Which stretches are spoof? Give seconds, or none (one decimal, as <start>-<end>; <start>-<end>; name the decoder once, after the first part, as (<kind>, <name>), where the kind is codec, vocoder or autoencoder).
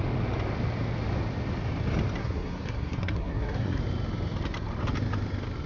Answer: 2.2-3.8 (codec, SNAC)